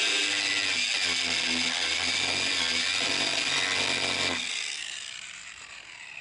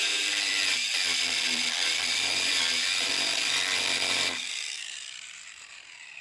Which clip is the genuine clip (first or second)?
first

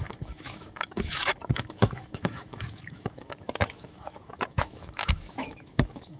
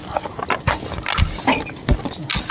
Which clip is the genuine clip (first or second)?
second